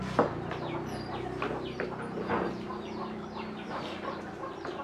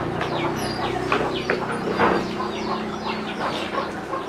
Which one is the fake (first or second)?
first